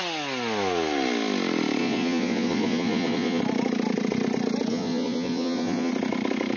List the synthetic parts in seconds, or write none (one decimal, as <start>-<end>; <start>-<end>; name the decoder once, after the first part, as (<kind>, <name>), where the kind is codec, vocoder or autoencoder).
1.8-3.4 (vocoder, Vocos); 4.7-5.9

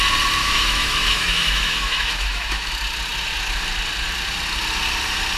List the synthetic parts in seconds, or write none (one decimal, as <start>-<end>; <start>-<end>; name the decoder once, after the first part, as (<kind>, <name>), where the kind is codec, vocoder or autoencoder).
0.4-2.7 (autoencoder, DAC-VAE)

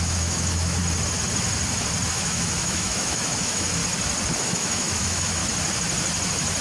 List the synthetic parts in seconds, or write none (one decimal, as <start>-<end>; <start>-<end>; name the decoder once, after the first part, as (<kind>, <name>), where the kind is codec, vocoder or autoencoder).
0.0-0.8 (autoencoder, DAC-VAE); 2.1-3.8; 4.4-5.4

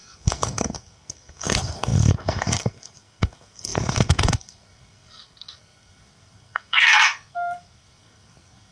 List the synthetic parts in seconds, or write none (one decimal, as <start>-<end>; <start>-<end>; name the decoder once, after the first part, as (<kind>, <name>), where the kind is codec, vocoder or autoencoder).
0.0-8.7 (codec, SNAC)